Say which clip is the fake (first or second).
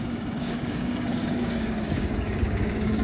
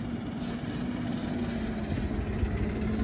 first